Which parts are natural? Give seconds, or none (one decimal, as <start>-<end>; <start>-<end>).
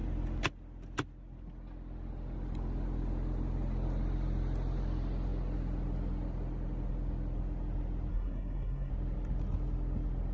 0.0-8.1; 8.9-10.3